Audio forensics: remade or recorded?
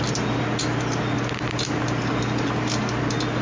recorded